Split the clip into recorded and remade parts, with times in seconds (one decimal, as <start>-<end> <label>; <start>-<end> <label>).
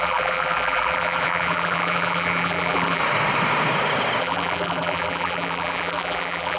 0.0-3.0 remade; 3.0-4.2 recorded; 4.2-6.6 remade